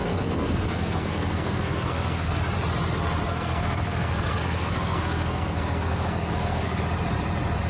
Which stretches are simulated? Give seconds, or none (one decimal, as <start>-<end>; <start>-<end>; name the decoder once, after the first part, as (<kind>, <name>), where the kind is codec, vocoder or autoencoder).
0.0-2.4 (codec, SNAC); 3.3-6.8

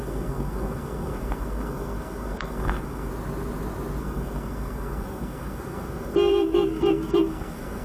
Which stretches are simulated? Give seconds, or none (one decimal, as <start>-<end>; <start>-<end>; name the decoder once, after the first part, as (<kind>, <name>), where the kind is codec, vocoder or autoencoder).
0.0-3.1 (codec, SNAC); 4.0-7.8

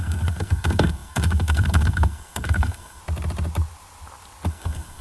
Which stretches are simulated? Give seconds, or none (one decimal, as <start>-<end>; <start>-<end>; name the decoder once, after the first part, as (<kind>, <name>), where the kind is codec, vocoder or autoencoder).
0.0-3.0 (codec, SNAC); 4.5-5.0